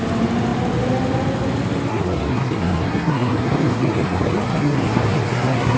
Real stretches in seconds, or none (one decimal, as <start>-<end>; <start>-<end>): 0.0-1.9